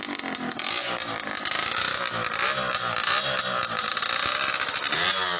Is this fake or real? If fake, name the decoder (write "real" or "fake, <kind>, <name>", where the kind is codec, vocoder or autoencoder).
real